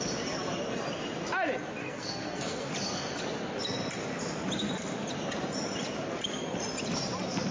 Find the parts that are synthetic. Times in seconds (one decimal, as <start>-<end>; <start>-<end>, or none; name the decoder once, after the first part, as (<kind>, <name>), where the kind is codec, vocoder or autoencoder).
1.8-2.7 (codec, SNAC)